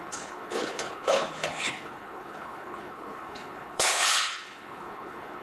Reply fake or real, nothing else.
fake